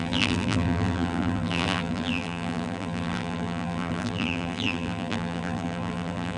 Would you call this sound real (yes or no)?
no